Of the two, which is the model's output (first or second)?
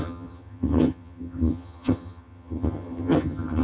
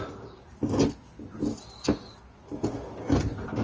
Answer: first